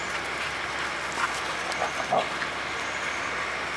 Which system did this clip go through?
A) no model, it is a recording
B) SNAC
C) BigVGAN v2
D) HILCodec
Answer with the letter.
A